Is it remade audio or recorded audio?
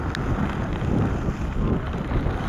recorded